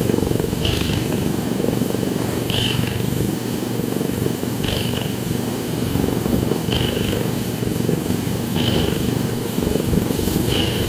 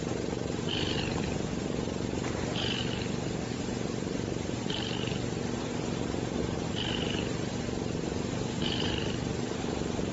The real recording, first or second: second